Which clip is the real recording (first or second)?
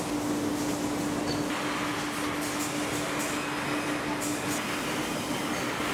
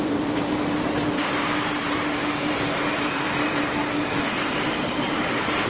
first